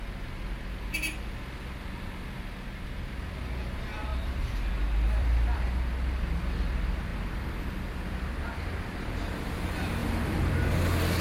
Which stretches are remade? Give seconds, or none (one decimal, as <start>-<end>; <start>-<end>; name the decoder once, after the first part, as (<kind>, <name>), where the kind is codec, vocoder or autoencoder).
4.1-5.9 (vocoder, BigVGAN v2); 10.0-10.5